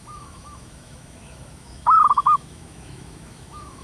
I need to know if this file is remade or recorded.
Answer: remade